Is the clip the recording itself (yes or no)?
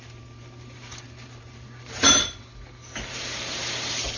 no